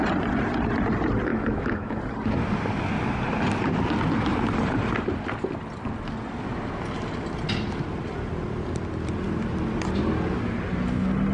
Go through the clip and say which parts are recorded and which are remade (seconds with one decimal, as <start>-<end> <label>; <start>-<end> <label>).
0.0-1.3 recorded; 1.3-2.0 remade; 2.0-11.3 recorded

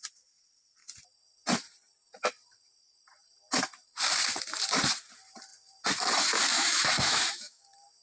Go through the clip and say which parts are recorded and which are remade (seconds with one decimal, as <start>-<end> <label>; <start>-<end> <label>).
0.0-6.5 recorded; 6.5-7.6 remade; 7.6-8.0 recorded

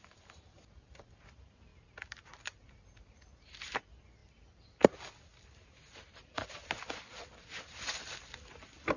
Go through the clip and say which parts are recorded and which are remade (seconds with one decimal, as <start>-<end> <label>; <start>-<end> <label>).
0.0-9.0 recorded